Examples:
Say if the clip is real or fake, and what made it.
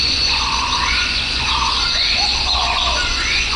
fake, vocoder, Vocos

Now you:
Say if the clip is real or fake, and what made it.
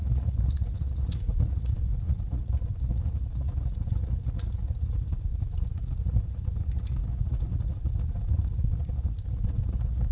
fake, vocoder, Vocos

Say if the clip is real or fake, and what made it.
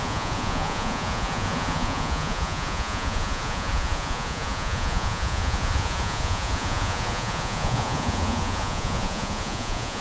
fake, vocoder, Vocos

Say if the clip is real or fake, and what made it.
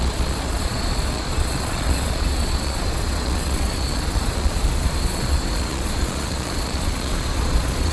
fake, vocoder, Vocos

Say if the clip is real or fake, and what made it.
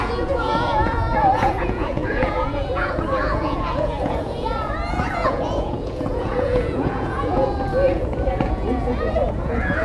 fake, vocoder, Vocos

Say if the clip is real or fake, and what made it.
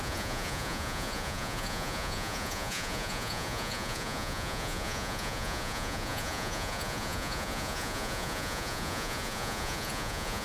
fake, vocoder, Vocos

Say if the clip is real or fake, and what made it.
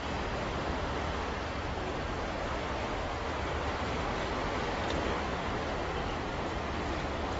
real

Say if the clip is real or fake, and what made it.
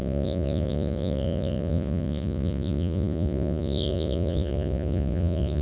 fake, vocoder, Vocos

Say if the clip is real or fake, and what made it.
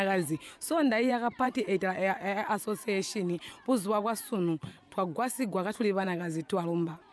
fake, vocoder, Vocos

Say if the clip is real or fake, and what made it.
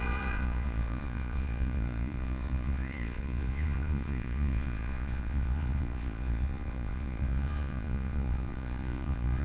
fake, vocoder, Vocos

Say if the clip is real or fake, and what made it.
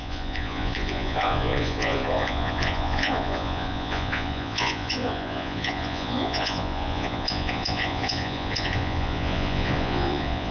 fake, vocoder, Vocos